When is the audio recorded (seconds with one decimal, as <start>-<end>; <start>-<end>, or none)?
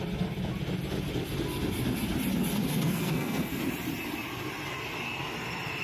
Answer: 0.0-2.6; 3.6-5.8